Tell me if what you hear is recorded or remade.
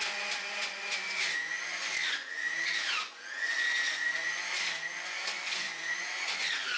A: remade